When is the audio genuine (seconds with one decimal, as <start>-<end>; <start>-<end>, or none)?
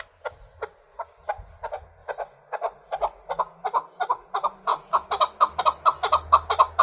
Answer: 0.0-4.7; 5.6-6.8